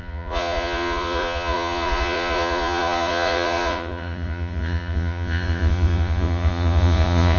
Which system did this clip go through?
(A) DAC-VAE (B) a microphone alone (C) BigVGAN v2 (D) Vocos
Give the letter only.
D